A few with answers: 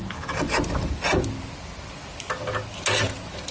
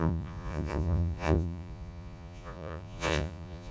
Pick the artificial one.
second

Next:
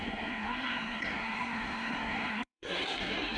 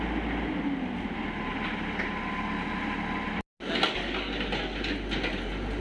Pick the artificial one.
first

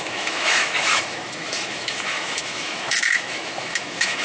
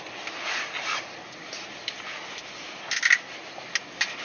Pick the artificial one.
first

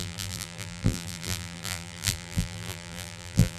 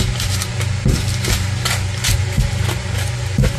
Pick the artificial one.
first